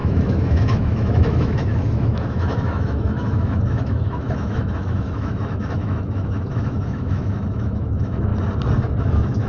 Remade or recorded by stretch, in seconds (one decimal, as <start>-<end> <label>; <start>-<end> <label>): 0.0-8.3 remade; 8.3-9.0 recorded; 9.0-9.5 remade